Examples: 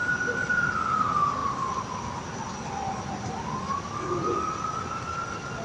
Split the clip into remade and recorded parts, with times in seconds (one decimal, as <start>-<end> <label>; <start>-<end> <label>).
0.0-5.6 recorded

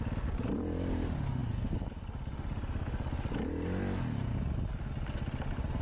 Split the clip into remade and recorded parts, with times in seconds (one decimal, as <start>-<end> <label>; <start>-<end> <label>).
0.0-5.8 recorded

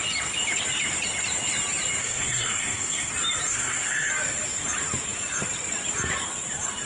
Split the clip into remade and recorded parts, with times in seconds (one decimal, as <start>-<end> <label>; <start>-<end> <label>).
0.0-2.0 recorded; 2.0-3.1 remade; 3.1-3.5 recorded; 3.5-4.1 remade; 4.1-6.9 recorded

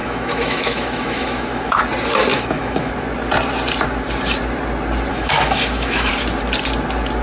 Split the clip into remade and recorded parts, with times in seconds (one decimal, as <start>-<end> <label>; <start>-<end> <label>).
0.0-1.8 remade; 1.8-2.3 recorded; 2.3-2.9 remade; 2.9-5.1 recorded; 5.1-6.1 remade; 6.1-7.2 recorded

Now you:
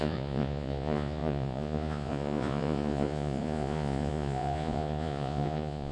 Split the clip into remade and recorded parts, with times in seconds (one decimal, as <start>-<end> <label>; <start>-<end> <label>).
0.0-5.9 remade